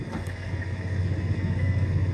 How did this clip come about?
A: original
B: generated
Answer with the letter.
B